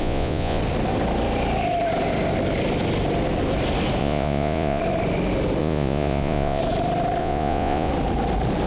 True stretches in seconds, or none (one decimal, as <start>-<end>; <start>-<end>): 0.6-4.0; 4.8-5.6; 6.6-7.2; 7.9-8.7